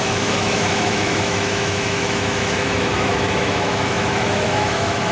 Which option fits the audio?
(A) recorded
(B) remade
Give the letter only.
B